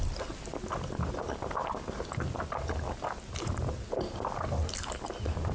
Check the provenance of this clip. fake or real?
real